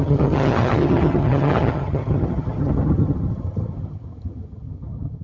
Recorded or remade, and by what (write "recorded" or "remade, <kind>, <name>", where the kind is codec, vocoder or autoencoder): remade, vocoder, HiFi-GAN